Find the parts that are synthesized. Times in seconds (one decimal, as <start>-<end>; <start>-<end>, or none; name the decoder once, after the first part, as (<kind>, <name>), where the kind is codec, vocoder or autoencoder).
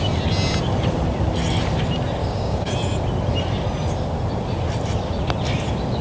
2.2-2.7 (codec, DAC)